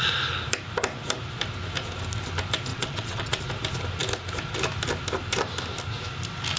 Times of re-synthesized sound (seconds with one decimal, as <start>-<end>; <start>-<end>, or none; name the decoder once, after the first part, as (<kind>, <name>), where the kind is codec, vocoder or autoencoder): 2.7-3.4 (vocoder, WaveNeXt)